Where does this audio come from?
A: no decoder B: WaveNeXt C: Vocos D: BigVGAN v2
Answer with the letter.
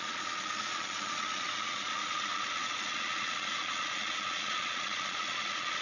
C